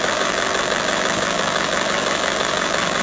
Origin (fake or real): fake